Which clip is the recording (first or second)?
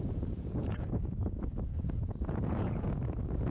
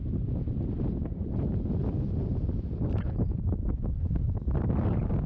second